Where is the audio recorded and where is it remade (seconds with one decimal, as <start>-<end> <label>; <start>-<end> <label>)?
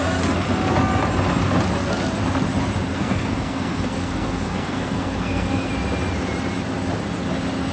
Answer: 0.0-2.9 recorded; 2.9-5.7 remade; 5.7-7.7 recorded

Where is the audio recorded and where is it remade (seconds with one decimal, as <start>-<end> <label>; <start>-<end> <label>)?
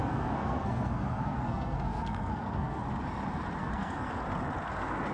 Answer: 0.0-2.8 remade; 2.8-3.6 recorded; 3.6-4.1 remade; 4.1-5.1 recorded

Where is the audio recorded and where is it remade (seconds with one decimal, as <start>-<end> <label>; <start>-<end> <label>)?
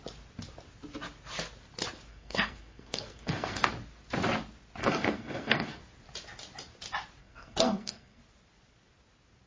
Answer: 0.0-2.1 recorded; 2.1-3.7 remade; 3.7-4.8 recorded; 4.8-5.8 remade; 5.8-7.2 recorded; 7.2-8.2 remade; 8.2-9.5 recorded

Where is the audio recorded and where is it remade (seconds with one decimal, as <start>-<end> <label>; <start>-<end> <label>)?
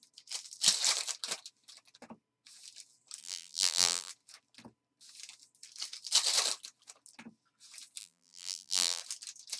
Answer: 0.0-3.2 recorded; 3.2-4.1 remade; 4.1-8.0 recorded; 8.0-9.0 remade; 9.0-9.6 recorded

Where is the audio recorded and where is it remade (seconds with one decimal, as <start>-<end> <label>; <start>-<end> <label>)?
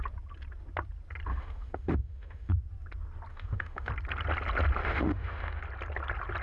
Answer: 0.0-1.3 recorded; 1.3-2.5 remade; 2.5-3.3 recorded; 3.3-3.9 remade; 3.9-4.8 recorded; 4.8-5.6 remade; 5.6-6.4 recorded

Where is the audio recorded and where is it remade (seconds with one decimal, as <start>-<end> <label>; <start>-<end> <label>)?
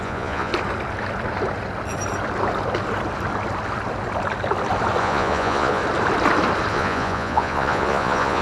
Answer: 0.0-0.5 remade; 0.5-5.0 recorded; 5.0-5.8 remade; 5.8-6.7 recorded; 6.7-8.4 remade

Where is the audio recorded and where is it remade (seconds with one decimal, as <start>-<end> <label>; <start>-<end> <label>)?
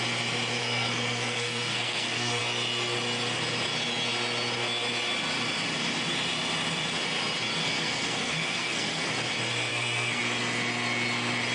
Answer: 0.0-0.6 recorded; 0.6-2.4 remade; 2.4-7.6 recorded; 7.6-9.1 remade; 9.1-9.7 recorded; 9.7-10.2 remade; 10.2-11.5 recorded